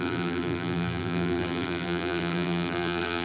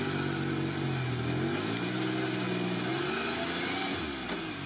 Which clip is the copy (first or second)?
first